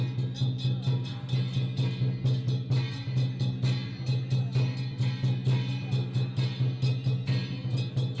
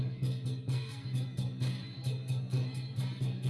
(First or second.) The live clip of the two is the first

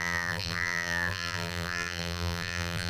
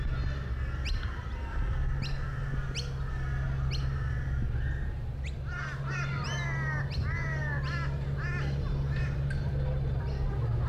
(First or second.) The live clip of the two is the second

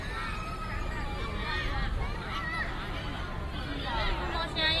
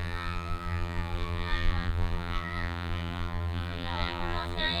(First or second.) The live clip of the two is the first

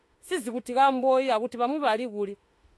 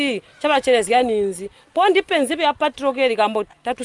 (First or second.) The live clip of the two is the second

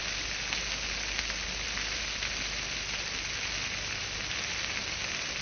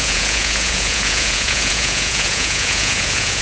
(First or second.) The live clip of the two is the first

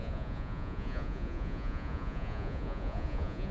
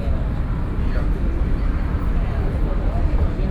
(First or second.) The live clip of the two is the second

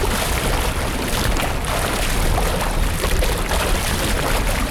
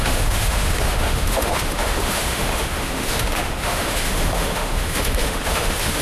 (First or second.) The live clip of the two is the first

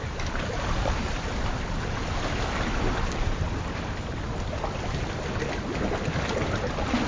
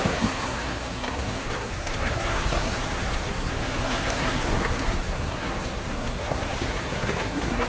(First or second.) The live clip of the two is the first